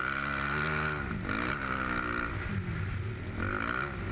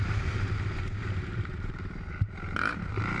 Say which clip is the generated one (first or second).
second